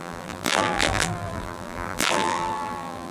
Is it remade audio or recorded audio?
remade